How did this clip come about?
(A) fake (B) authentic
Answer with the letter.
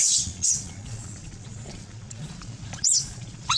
A